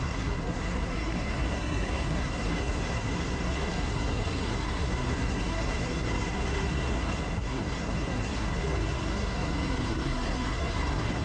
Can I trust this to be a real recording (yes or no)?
no